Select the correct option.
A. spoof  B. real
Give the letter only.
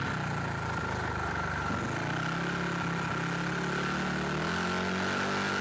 B